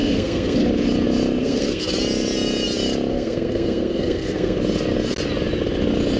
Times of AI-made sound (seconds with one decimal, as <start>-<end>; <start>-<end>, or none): 0.0-0.7; 1.4-1.9; 3.1-4.6